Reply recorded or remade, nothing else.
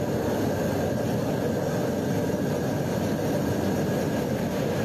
recorded